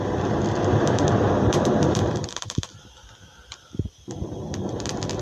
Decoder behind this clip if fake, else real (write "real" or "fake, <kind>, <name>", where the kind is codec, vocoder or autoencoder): fake, vocoder, BigVGAN v2